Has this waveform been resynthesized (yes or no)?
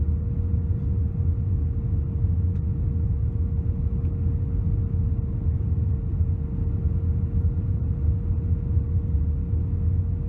no